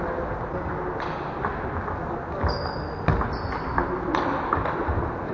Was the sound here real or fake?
real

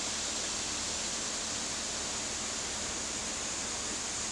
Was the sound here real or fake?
real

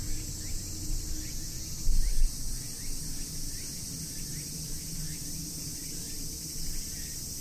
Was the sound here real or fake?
real